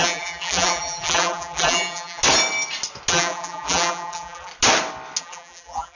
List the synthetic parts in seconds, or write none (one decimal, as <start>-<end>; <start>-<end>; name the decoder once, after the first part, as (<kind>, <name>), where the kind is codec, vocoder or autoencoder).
0.0-2.2 (vocoder, BigVGAN v2); 3.1-4.5; 5.2-6.0